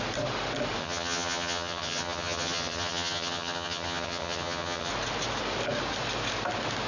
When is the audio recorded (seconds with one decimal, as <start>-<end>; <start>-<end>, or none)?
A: 0.0-0.8; 4.9-6.9